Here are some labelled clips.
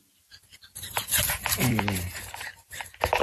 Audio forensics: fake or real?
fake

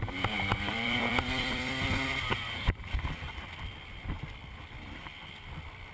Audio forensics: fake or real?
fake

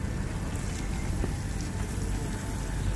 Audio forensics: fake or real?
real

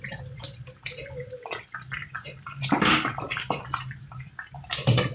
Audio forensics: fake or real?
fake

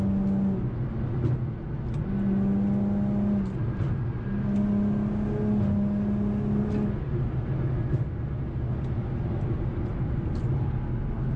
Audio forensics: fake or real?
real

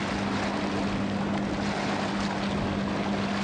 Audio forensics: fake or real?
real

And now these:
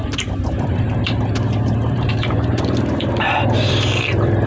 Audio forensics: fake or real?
fake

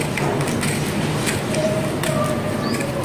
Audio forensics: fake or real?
real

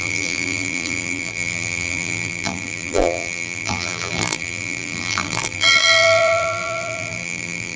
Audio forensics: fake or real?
fake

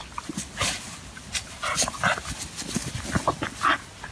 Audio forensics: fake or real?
real